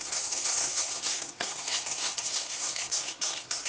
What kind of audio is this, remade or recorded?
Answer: remade